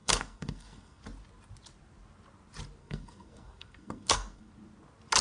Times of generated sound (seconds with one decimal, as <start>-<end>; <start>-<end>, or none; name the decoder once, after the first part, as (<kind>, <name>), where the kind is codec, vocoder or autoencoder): 0.0-1.0 (codec, SNAC); 2.8-4.5